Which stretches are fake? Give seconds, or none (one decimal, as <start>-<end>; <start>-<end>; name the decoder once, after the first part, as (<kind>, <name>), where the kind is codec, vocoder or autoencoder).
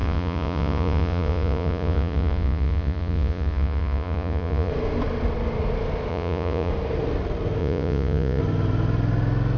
0.0-4.7 (vocoder, Vocos); 6.1-6.7; 7.6-8.4